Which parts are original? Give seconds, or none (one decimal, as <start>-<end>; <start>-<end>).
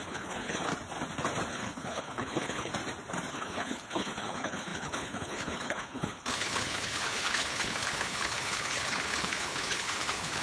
0.7-1.5; 2.7-3.3